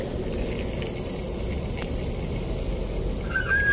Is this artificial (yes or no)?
no